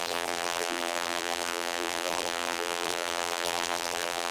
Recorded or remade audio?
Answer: remade